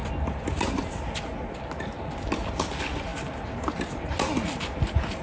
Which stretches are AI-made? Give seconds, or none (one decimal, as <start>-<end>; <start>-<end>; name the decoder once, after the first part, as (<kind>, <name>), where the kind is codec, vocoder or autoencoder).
none